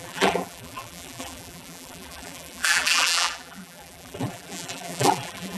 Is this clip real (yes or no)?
no